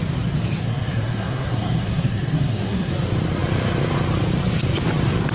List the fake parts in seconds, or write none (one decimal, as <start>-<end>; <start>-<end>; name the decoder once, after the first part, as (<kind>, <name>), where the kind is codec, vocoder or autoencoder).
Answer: 0.6-2.9 (codec, SNAC)